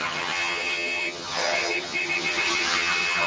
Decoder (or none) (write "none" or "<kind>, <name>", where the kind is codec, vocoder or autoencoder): vocoder, HiFi-GAN